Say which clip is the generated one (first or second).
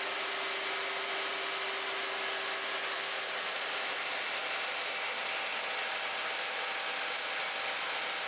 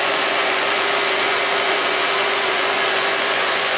second